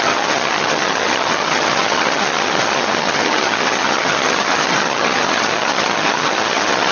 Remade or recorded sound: remade